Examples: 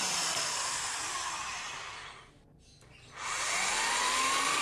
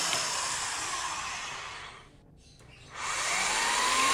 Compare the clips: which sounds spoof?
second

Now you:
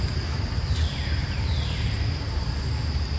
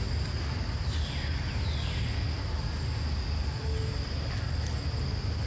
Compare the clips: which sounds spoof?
first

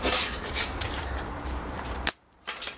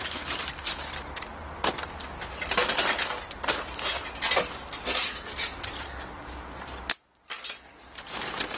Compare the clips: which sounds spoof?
first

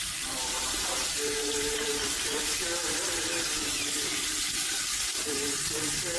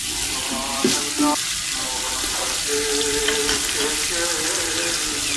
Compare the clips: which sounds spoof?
first